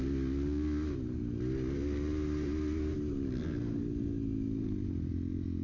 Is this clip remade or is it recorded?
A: recorded